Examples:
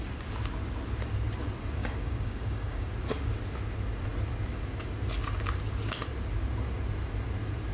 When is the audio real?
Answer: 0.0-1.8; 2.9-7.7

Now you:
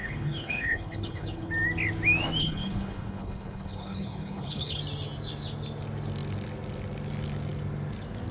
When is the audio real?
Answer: 1.5-2.4; 4.8-8.3

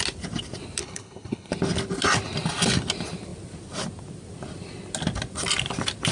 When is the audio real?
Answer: 0.0-0.8; 1.5-6.1

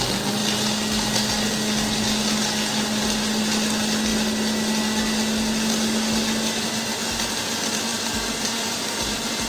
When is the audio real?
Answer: 0.0-9.5